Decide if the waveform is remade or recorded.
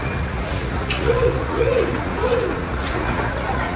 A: remade